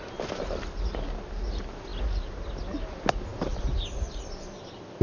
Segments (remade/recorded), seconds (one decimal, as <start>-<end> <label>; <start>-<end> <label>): 0.0-5.0 recorded